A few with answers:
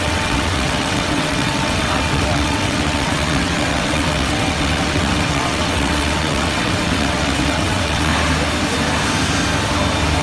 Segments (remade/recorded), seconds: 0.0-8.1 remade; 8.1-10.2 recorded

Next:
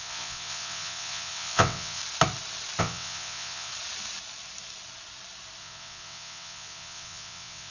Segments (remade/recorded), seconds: 0.0-2.0 remade; 2.0-2.8 recorded; 2.8-3.7 remade; 3.7-5.6 recorded; 5.6-7.7 remade

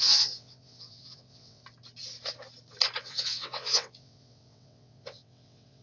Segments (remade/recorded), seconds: 0.0-1.6 remade; 1.6-3.0 recorded; 3.0-5.8 remade

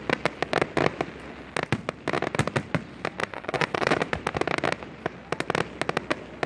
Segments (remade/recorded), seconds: 0.0-3.2 recorded; 3.2-3.9 remade; 3.9-6.5 recorded

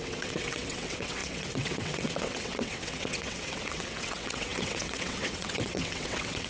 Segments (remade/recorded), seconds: 0.0-6.5 remade

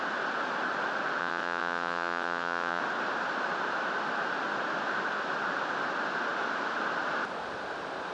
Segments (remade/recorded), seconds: 0.0-1.2 recorded; 1.2-2.8 remade; 2.8-8.1 recorded